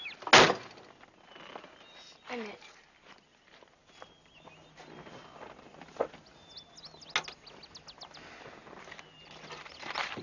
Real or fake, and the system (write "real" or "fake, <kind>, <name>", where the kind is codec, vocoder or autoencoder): real